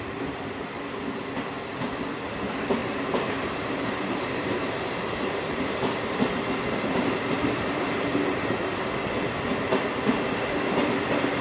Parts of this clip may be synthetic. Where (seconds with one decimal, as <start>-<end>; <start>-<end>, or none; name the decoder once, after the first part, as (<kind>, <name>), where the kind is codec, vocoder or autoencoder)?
2.8-7.6 (vocoder, BigVGAN v2)